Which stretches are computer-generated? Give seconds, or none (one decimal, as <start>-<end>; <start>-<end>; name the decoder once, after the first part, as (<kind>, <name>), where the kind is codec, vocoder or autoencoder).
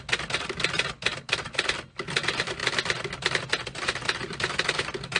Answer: none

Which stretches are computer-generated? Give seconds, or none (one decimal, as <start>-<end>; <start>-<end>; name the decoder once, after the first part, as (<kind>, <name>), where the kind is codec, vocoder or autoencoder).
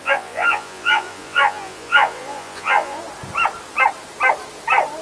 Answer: 0.0-3.0 (vocoder, Vocos)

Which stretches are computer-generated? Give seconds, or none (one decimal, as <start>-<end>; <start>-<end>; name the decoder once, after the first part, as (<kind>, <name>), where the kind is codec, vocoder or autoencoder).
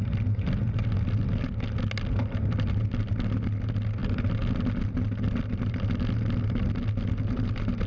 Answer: none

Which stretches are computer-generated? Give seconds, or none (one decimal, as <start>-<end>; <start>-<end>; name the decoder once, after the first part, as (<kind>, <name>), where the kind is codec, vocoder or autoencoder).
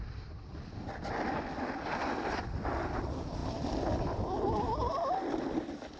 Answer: none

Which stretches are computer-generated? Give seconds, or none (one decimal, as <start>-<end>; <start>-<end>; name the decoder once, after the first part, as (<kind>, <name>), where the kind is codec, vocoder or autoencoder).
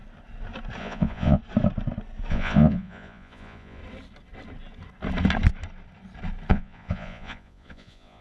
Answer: 0.8-1.4 (vocoder, Vocos); 2.3-3.8; 6.5-8.2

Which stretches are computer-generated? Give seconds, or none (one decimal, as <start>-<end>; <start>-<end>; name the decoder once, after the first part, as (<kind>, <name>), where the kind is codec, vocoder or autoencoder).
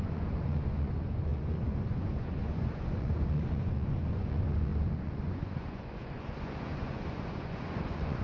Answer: 0.0-8.2 (vocoder, Vocos)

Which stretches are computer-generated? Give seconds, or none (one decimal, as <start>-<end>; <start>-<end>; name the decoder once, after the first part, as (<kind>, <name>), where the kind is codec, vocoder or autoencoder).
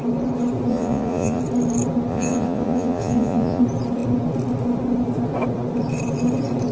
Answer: 0.7-1.4 (vocoder, Vocos); 2.1-3.6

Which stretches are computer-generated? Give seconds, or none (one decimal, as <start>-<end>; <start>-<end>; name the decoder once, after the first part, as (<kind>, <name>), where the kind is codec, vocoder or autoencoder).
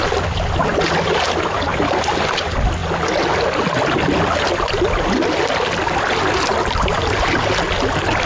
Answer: none